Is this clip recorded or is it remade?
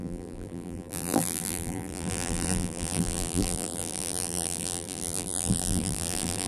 remade